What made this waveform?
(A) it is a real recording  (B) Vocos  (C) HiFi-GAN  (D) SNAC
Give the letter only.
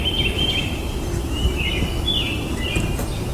A